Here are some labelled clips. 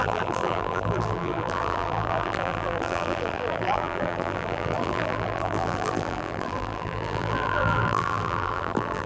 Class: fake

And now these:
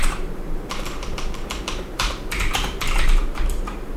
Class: fake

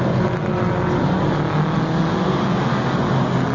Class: real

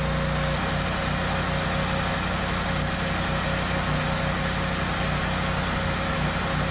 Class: real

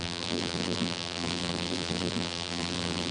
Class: fake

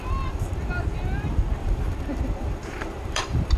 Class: fake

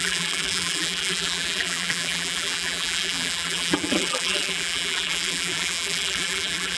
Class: fake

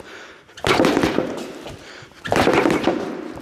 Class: real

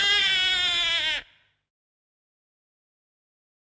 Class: real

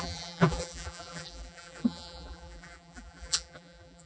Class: fake